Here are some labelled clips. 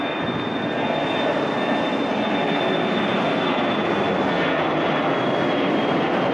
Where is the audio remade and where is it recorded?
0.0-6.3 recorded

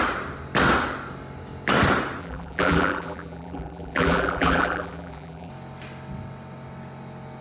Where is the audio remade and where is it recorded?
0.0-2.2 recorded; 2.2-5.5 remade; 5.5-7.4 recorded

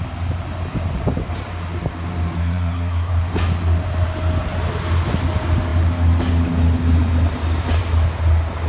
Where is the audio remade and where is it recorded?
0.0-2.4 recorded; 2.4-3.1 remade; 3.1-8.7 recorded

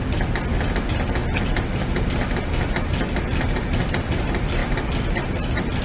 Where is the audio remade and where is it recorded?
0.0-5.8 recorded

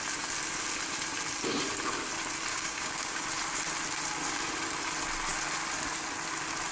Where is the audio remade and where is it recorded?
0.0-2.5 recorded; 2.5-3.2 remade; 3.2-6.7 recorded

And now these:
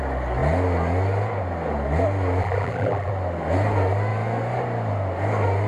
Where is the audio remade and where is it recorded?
0.0-2.4 recorded; 2.4-3.1 remade; 3.1-5.7 recorded